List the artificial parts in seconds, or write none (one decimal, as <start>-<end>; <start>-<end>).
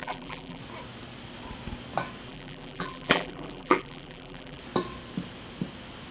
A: 0.0-0.6; 2.3-4.6